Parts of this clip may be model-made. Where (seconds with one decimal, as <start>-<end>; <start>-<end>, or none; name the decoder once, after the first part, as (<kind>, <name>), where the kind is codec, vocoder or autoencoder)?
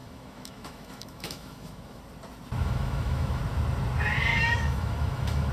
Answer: 0.0-2.0 (autoencoder, DAC-VAE); 2.6-3.4; 4.3-5.5